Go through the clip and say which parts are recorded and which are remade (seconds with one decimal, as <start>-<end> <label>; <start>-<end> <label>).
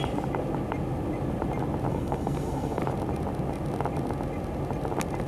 0.0-1.9 recorded; 1.9-2.8 remade; 2.8-5.3 recorded